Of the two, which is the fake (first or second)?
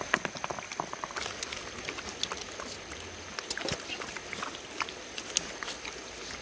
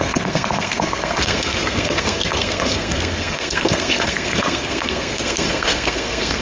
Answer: second